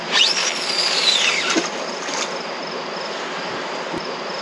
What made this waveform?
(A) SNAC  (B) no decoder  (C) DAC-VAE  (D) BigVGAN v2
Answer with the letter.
B